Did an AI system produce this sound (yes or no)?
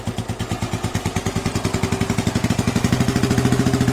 no